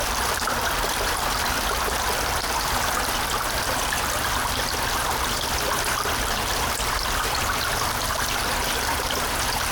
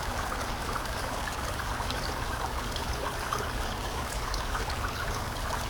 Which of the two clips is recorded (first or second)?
first